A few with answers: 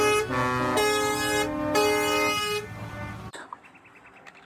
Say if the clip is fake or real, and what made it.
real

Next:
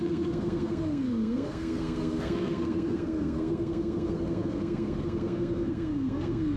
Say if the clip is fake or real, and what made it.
fake, codec, SNAC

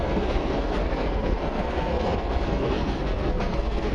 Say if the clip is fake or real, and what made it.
fake, codec, SNAC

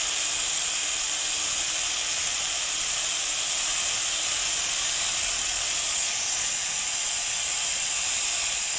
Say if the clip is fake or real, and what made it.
real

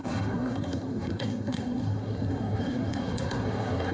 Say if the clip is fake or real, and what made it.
fake, codec, SNAC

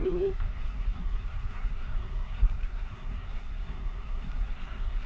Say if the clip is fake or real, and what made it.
fake, codec, SNAC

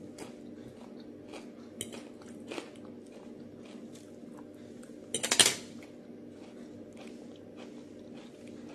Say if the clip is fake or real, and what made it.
real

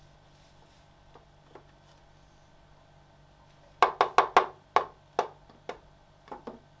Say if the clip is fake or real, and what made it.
real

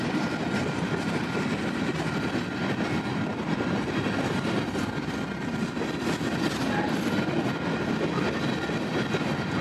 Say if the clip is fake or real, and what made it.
real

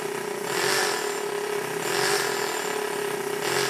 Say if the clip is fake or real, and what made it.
real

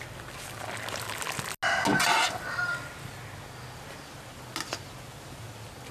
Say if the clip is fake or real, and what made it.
real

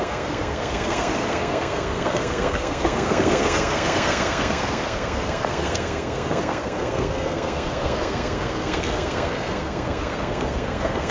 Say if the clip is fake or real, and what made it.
fake, codec, SNAC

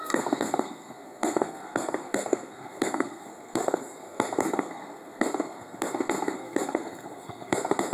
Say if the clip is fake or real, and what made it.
fake, codec, SNAC